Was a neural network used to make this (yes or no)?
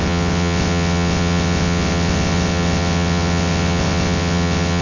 yes